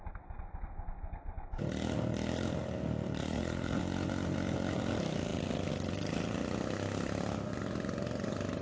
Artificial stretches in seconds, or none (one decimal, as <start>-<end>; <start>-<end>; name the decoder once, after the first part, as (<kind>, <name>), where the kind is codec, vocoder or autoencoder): 3.2-3.8 (vocoder, Vocos)